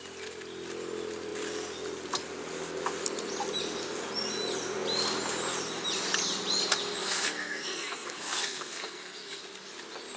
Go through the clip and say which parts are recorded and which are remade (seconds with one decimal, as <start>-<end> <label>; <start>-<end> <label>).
0.0-7.0 recorded; 7.0-9.4 remade; 9.4-10.2 recorded